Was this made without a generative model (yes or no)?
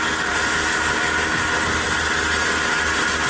yes